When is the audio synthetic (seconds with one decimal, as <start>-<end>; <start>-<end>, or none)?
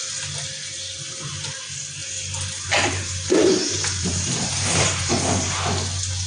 2.0-5.1